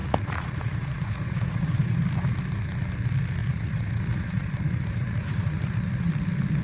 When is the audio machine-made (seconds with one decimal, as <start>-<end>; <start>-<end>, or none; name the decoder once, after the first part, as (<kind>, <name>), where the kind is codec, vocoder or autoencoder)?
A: 0.0-2.0 (vocoder, Vocos); 3.4-6.1